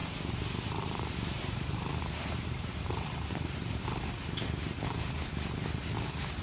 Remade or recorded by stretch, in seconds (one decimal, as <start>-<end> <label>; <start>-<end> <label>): 0.0-3.8 remade; 3.8-6.4 recorded